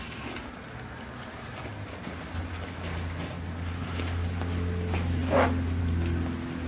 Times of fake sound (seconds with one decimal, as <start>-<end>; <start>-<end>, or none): none